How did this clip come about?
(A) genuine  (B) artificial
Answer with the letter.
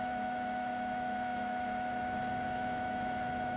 B